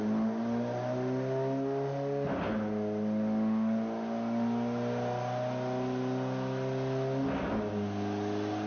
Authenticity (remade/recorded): recorded